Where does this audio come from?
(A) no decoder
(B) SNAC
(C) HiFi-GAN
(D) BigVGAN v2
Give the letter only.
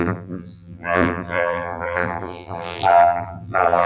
D